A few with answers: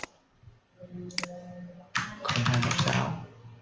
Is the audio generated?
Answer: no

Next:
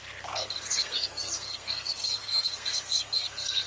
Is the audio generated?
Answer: yes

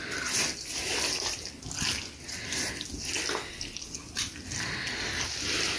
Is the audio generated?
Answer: no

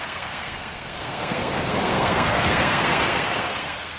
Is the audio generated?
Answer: yes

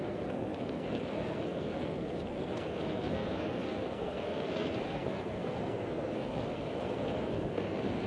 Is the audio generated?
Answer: yes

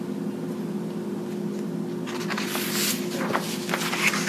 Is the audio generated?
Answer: no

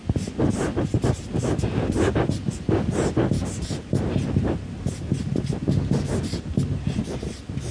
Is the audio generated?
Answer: no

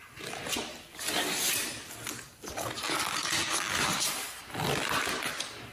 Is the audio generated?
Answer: no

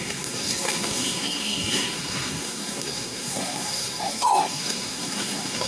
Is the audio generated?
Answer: yes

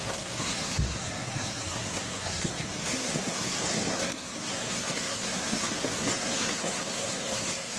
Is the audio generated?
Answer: yes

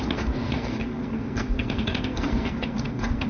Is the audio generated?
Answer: yes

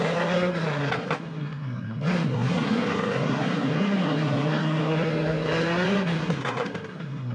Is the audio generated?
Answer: yes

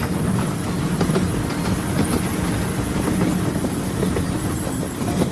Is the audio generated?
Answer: no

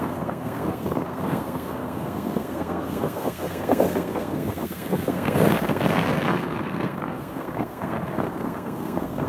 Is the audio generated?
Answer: yes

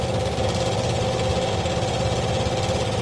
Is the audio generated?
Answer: no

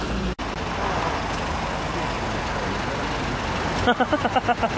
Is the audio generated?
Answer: no